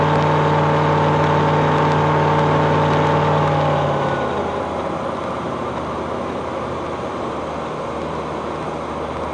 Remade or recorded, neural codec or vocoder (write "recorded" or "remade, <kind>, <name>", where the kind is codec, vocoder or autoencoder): recorded